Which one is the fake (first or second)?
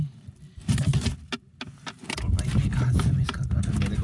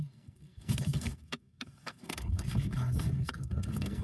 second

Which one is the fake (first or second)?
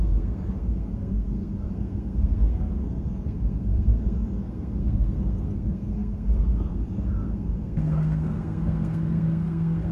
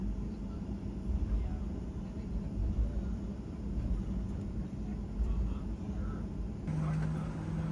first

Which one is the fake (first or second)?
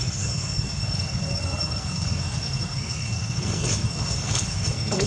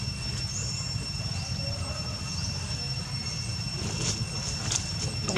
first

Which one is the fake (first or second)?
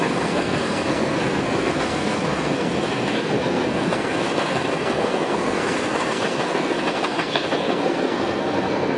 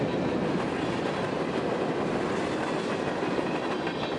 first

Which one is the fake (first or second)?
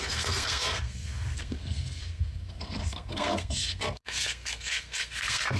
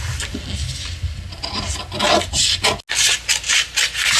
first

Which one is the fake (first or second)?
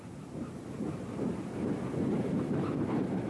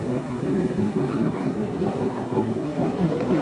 second